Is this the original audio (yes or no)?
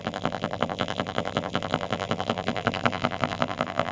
no